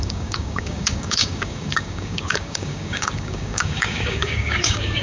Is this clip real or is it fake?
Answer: fake